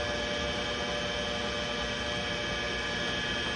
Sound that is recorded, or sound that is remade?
recorded